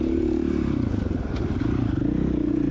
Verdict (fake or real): real